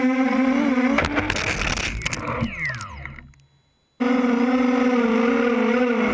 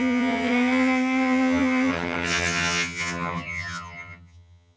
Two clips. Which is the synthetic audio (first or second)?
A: second